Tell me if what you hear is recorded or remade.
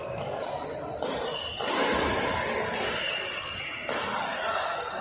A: recorded